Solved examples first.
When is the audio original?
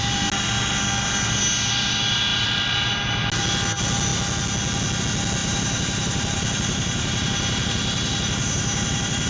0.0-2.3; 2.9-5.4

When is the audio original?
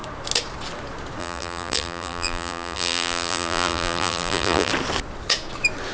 0.0-1.2; 4.7-5.9